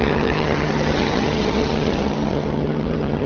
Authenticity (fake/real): fake